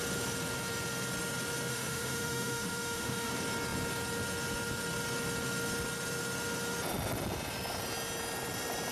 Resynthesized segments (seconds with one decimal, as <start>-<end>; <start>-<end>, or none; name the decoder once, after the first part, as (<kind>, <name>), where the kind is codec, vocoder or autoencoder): 1.7-3.3 (autoencoder, DAC-VAE)